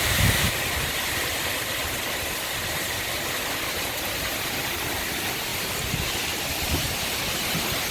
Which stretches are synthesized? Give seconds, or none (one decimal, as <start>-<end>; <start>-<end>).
none